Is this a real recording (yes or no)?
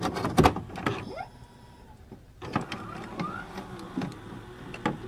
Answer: yes